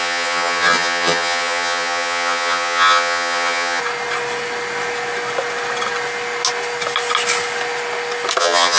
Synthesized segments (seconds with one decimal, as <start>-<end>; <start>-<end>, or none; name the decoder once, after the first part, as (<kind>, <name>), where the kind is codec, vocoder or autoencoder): 0.0-3.8 (vocoder, HiFi-GAN); 8.4-8.8